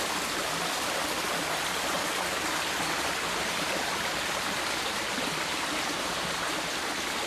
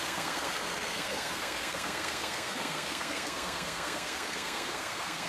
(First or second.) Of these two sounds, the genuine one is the first